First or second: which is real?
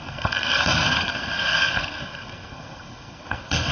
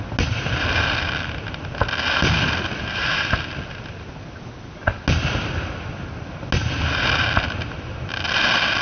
second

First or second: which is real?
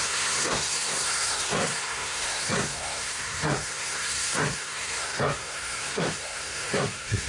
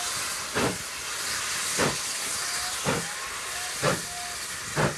second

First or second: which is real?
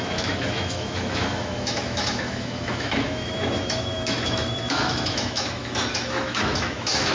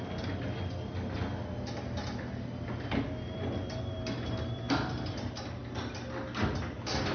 second